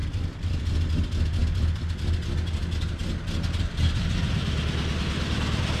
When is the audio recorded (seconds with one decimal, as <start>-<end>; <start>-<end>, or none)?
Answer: 0.6-5.8